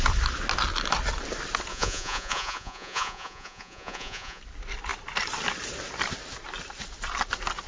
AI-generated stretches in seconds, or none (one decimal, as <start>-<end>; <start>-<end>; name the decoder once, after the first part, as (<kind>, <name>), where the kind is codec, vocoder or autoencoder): 1.7-4.4 (vocoder, Vocos)